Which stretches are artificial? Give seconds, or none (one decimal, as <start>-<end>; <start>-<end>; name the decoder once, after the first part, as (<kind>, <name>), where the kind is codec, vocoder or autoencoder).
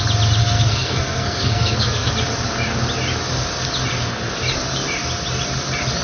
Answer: 0.4-2.1 (codec, SNAC)